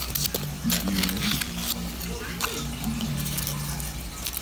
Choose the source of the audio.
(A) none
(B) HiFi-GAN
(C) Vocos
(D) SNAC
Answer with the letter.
A